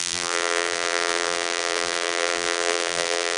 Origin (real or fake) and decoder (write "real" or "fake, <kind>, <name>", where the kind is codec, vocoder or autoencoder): fake, vocoder, BigVGAN v2